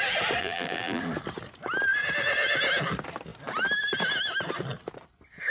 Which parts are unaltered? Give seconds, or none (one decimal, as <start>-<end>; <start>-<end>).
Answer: 0.0-0.4; 1.0-5.5